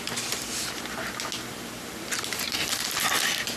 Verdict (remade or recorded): recorded